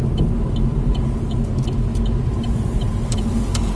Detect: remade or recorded recorded